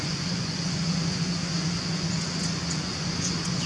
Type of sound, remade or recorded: remade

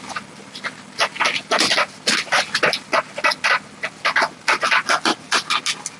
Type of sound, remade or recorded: recorded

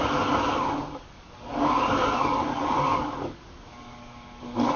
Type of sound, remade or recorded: remade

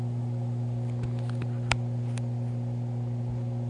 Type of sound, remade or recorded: recorded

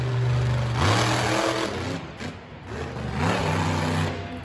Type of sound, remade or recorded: recorded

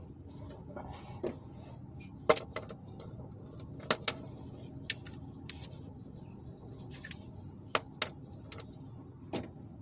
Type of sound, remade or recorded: recorded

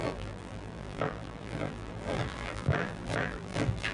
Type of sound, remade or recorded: remade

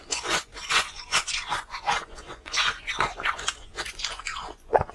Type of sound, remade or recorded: remade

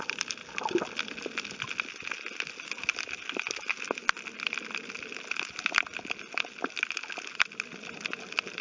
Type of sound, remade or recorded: recorded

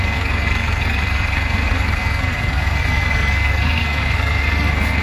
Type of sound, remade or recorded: remade